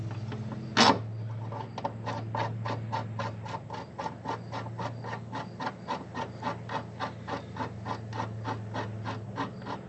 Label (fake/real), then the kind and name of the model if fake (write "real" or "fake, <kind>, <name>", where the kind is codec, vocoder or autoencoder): real